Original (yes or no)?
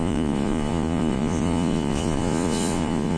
no